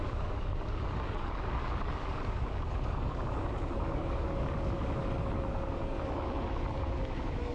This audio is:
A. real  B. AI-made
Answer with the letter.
B